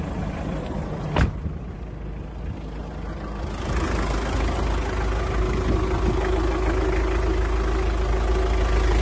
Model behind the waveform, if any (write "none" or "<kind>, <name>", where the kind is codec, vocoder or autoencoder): none